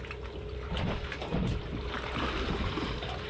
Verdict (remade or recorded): recorded